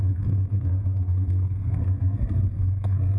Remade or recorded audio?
remade